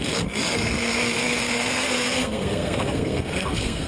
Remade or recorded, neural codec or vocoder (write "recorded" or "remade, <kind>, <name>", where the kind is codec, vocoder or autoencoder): remade, codec, SNAC